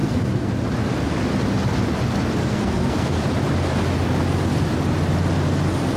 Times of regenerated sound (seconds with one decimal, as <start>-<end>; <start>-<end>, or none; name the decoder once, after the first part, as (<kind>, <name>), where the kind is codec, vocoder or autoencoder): 0.0-0.5 (codec, SNAC); 2.4-3.2